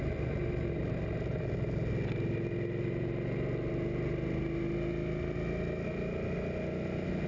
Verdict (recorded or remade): recorded